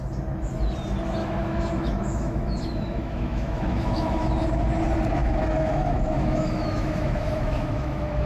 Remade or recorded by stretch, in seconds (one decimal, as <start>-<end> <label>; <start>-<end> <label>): 0.0-1.2 recorded; 1.2-4.3 remade; 4.3-5.2 recorded; 5.2-8.3 remade